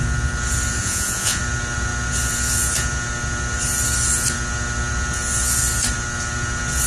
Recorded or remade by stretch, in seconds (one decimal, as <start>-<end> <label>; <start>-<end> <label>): 0.0-0.8 recorded; 0.8-1.4 remade; 1.4-6.9 recorded